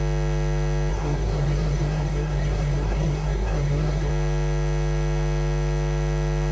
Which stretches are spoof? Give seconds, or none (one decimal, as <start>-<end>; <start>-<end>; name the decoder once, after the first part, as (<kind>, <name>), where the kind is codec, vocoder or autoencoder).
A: 0.9-4.1 (codec, SNAC)